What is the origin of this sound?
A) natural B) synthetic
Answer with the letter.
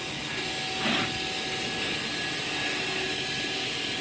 A